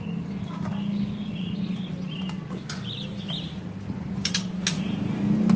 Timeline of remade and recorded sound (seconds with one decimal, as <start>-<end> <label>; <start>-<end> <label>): 0.0-5.6 recorded